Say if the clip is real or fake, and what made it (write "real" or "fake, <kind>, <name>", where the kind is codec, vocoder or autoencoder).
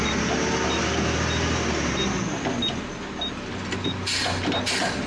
real